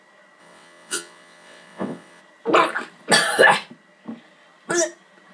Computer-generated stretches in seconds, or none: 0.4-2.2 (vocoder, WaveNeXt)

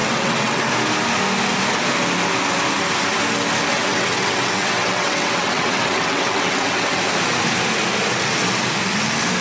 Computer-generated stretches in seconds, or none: 0.0-0.7 (vocoder, WaveNeXt); 3.7-7.0

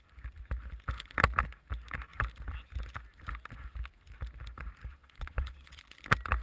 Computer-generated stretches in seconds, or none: 4.9-5.8 (vocoder, WaveNeXt)

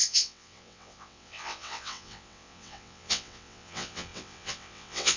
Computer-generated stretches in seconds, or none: 0.0-5.2 (vocoder, WaveNeXt)

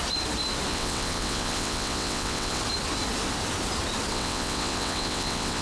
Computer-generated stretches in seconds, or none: 0.7-2.6 (vocoder, WaveNeXt); 4.1-5.6

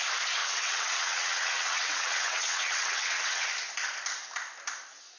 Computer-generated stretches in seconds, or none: 0.4-3.5 (vocoder, WaveNeXt)